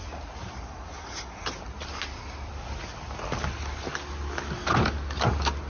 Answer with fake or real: real